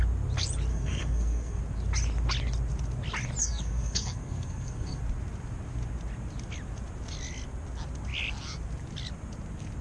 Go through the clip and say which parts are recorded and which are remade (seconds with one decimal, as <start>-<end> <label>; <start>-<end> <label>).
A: 0.0-0.7 recorded; 0.7-1.6 remade; 1.6-3.4 recorded; 3.4-5.0 remade; 5.0-9.8 recorded